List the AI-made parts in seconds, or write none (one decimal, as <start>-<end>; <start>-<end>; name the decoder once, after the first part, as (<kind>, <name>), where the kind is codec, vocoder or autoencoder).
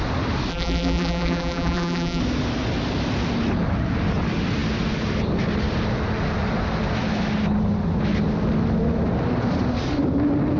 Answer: 0.5-2.2 (vocoder, BigVGAN v2)